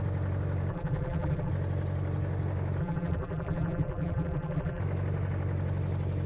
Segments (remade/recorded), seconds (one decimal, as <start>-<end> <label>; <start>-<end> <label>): 0.0-0.7 recorded; 0.7-1.5 remade; 1.5-2.8 recorded; 2.8-4.8 remade; 4.8-6.3 recorded